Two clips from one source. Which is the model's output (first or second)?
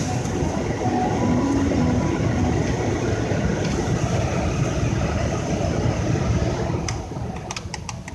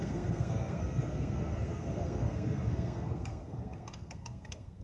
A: second